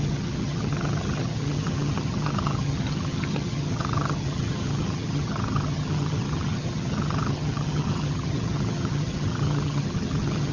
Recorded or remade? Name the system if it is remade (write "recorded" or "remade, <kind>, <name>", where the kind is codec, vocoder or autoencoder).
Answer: remade, vocoder, HiFi-GAN